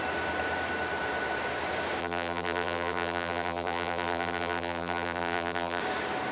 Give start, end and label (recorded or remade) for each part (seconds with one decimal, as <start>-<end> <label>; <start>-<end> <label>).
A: 0.0-2.0 recorded; 2.0-5.8 remade; 5.8-6.3 recorded